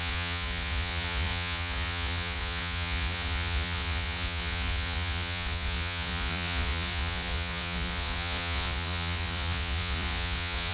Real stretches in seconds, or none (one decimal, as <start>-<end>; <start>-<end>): none